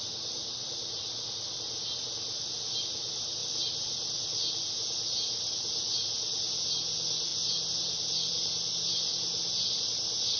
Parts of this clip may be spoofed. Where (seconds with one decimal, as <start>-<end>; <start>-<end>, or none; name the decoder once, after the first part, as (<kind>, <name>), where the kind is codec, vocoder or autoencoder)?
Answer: none